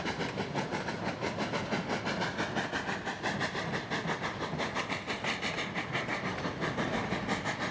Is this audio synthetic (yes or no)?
no